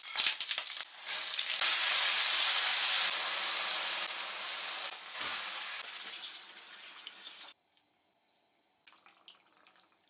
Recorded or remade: recorded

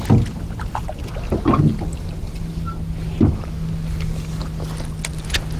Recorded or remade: recorded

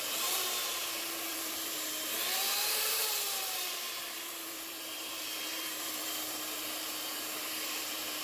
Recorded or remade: remade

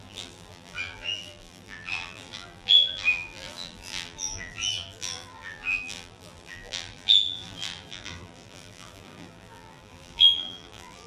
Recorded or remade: remade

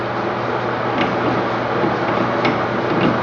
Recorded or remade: recorded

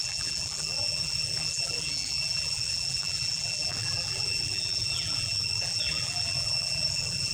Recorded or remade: remade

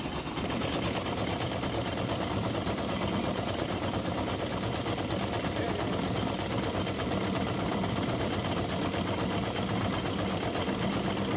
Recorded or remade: recorded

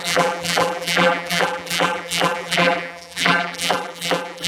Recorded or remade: remade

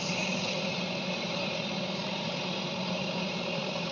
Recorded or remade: remade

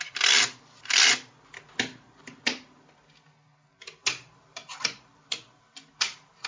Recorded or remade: recorded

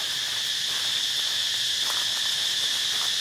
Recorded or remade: recorded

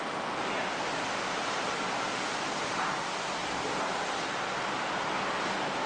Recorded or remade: recorded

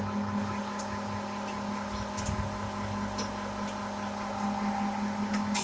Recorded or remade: recorded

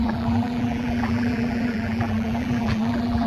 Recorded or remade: remade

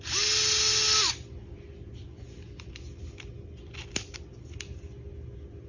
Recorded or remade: recorded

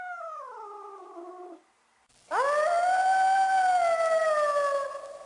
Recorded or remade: recorded